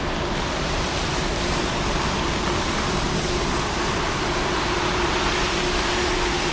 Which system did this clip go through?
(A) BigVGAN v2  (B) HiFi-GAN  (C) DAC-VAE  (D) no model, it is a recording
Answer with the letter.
D